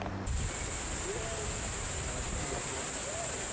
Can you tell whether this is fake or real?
real